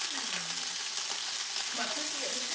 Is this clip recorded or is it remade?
recorded